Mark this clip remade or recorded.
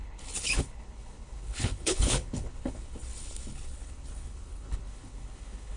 remade